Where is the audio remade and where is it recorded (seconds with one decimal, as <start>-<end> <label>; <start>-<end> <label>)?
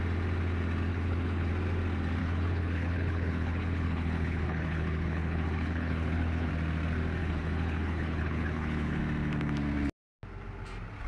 0.0-0.9 recorded; 0.9-1.5 remade; 1.5-2.2 recorded; 2.2-6.5 remade; 6.5-7.2 recorded; 7.2-9.0 remade; 9.0-11.1 recorded